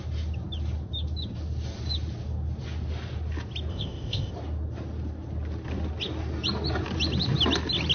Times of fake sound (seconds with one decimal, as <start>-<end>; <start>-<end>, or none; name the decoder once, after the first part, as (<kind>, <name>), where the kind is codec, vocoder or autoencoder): 3.7-4.3 (codec, ZipCodec)